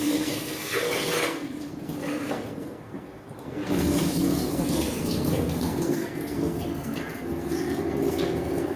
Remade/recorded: remade